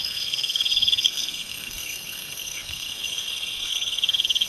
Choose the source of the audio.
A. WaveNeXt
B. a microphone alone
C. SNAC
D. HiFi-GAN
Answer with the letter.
C